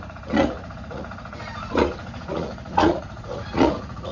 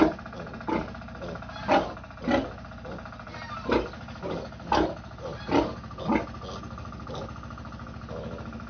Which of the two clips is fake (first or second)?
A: first